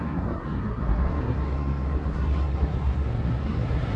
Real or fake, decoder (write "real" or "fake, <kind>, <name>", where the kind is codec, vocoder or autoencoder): fake, codec, SNAC